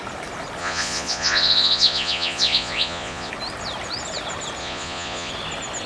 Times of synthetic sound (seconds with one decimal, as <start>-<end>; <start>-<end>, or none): 0.6-3.3; 4.6-5.3